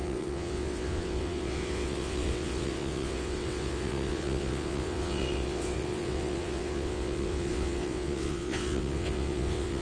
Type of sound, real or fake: fake